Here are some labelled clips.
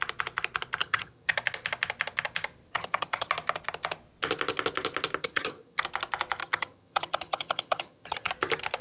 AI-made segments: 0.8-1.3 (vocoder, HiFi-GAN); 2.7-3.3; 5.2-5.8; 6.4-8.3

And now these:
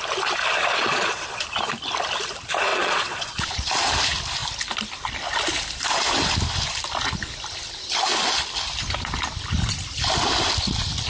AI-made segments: 0.7-1.4 (vocoder, Vocos); 2.7-3.9